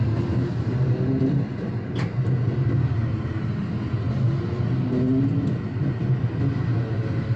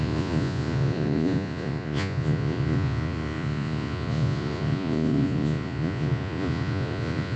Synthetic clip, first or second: second